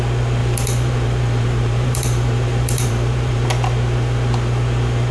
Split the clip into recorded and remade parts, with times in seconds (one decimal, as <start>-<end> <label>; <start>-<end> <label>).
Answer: 0.0-0.4 recorded; 0.4-3.5 remade; 3.5-5.1 recorded